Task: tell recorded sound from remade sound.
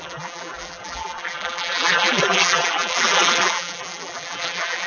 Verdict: remade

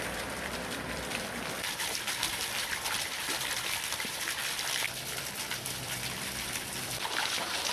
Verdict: remade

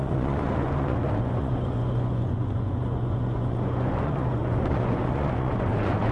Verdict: remade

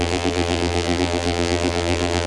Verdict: remade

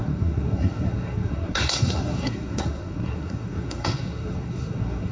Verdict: remade